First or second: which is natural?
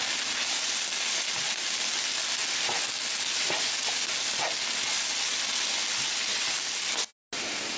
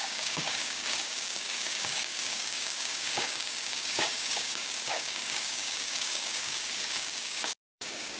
first